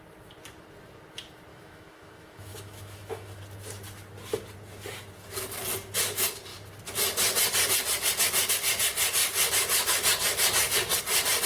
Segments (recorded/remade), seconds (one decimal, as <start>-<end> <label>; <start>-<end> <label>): 0.0-1.5 recorded; 1.5-3.4 remade; 3.4-11.5 recorded